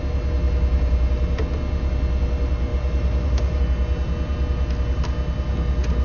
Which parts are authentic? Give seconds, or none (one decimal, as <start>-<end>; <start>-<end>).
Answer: 0.0-2.7; 3.6-6.0